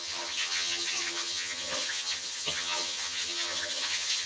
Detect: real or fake fake